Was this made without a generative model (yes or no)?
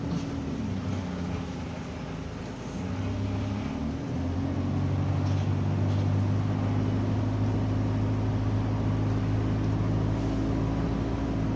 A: yes